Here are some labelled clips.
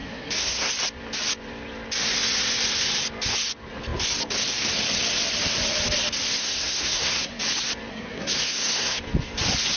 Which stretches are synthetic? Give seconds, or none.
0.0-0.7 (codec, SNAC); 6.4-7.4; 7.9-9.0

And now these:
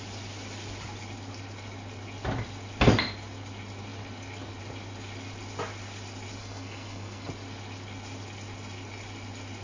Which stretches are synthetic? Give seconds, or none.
6.4-7.3 (codec, SNAC)

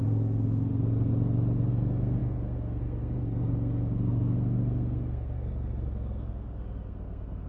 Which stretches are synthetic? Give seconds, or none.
0.0-1.1 (codec, SNAC); 1.7-7.5

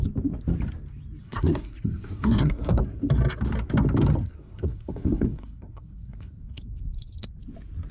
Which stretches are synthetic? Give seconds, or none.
1.2-2.8 (codec, SNAC); 4.2-7.3

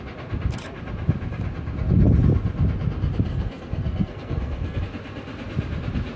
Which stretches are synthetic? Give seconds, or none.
3.3-4.8 (codec, SNAC)